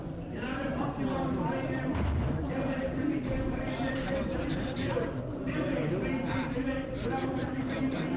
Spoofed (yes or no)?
yes